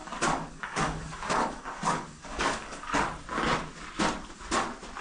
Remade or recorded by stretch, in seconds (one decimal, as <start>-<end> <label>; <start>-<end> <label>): 0.0-3.0 remade; 3.0-5.0 recorded